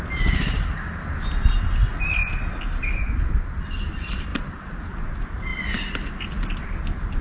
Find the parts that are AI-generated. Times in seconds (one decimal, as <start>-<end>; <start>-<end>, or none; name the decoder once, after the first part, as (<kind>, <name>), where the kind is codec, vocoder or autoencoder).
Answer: none